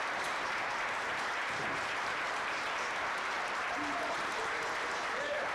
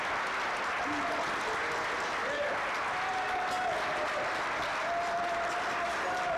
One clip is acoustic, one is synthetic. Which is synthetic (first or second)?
first